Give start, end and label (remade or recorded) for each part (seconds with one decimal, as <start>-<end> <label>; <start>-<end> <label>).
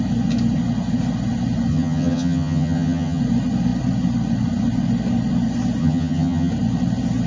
0.0-1.7 recorded; 1.7-3.2 remade; 3.2-5.8 recorded; 5.8-6.5 remade; 6.5-7.3 recorded